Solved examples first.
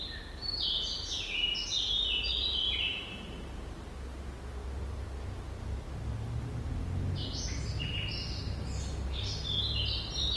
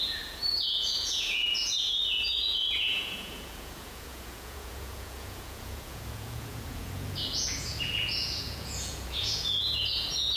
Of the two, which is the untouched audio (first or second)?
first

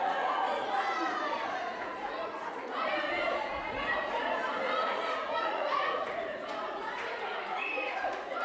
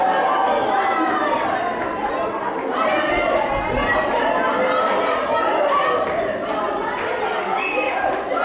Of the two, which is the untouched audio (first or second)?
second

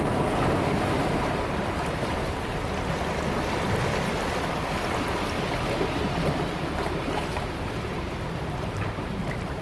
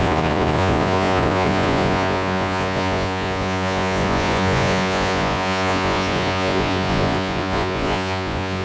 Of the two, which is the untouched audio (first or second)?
first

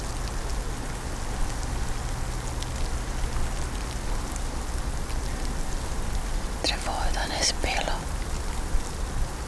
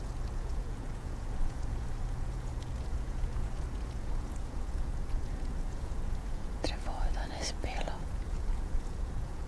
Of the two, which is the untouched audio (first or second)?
first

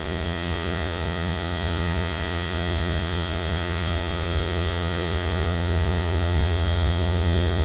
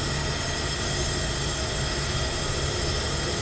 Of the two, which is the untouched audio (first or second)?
second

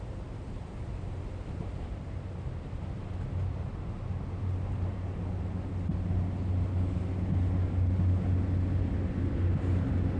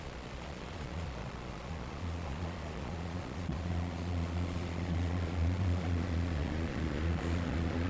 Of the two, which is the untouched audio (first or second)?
first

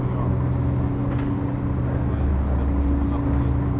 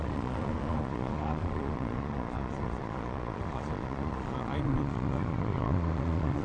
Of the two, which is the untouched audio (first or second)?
first